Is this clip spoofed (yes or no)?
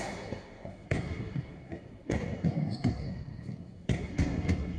yes